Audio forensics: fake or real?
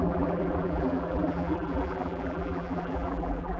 fake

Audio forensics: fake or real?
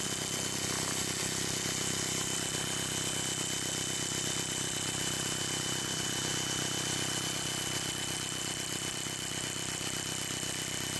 real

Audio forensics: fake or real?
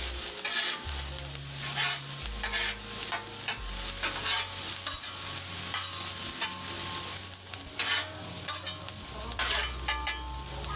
fake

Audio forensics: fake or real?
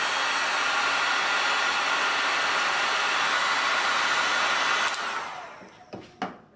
real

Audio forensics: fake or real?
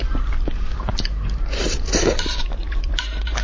fake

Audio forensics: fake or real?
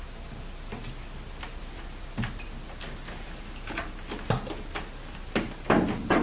real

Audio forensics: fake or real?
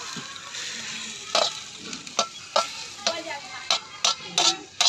real